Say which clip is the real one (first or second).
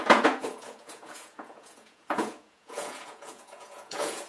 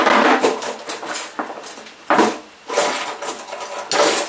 second